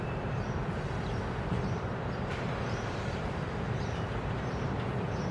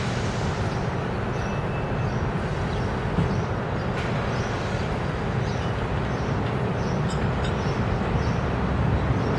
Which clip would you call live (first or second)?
second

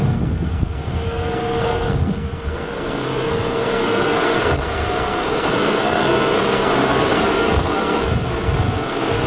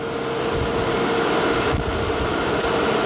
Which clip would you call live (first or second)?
second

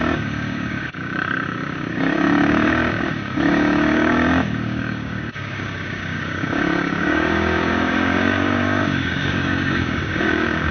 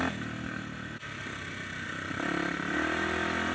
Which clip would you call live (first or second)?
second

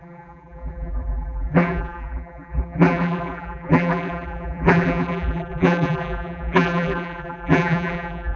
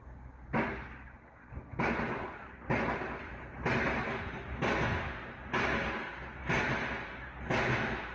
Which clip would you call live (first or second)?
second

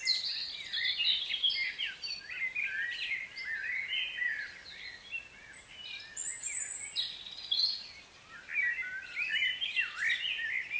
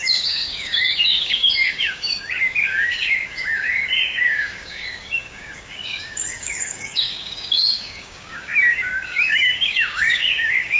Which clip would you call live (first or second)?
first